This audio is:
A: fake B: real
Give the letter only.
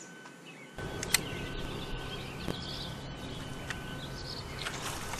B